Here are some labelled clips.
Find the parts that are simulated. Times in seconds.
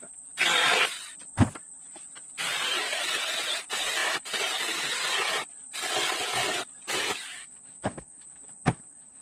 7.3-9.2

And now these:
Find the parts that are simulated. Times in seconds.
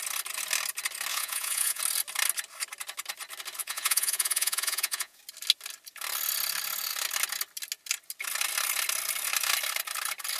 1.1-1.8; 3.6-5.2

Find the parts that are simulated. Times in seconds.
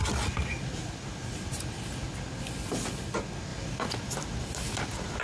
none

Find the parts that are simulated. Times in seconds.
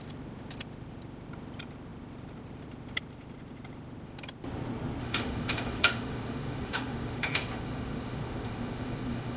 5.0-9.4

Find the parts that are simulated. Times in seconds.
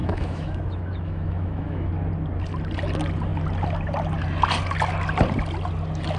0.0-1.9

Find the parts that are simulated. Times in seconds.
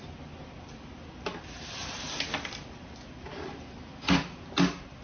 none